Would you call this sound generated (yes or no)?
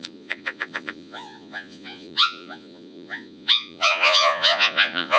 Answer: yes